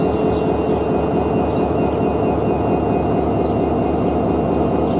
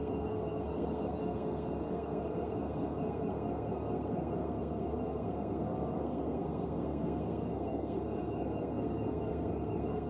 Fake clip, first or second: second